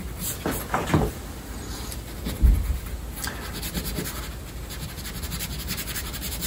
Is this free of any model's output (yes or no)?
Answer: yes